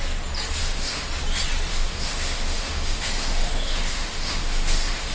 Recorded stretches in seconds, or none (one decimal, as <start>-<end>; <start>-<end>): 0.0-0.6; 1.1-1.7